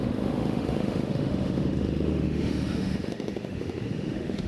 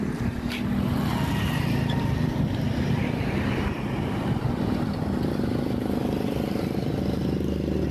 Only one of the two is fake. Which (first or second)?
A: first